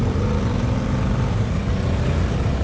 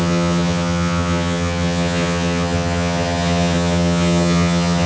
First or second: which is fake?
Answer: second